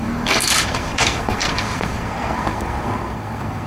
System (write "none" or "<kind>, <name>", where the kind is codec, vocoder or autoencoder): codec, SNAC